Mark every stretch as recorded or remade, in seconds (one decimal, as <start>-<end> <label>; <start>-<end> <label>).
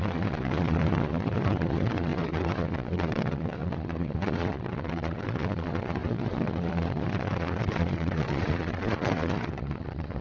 0.0-10.2 remade